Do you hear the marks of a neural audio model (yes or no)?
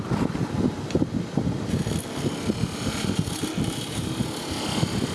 no